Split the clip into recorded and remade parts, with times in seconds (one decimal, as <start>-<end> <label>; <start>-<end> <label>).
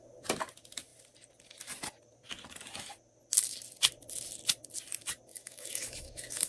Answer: 0.0-5.3 recorded; 5.3-6.5 remade